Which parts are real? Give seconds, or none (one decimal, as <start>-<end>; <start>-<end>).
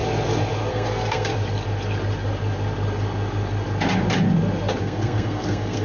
0.0-0.7; 1.3-4.8